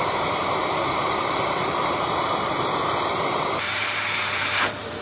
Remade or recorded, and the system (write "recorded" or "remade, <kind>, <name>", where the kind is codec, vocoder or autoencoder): remade, vocoder, BigVGAN v2